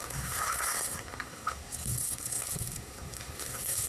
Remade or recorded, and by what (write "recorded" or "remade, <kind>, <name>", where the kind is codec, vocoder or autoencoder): remade, codec, SNAC